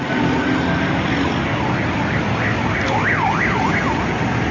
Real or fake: real